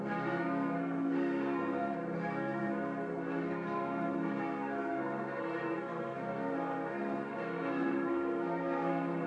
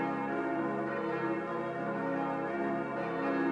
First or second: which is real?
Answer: second